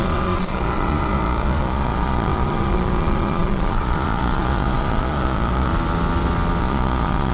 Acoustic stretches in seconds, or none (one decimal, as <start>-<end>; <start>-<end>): 5.7-6.6